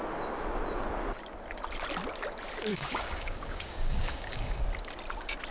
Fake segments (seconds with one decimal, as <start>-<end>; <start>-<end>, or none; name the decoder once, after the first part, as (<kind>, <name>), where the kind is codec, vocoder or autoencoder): 2.7-4.6 (codec, DAC)